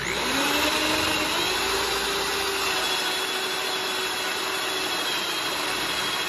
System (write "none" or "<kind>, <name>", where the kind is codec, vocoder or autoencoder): none